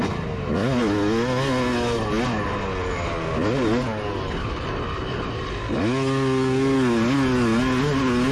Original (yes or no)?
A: yes